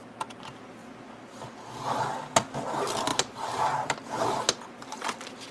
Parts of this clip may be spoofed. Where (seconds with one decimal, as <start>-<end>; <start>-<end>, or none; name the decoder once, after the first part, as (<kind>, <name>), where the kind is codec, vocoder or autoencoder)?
none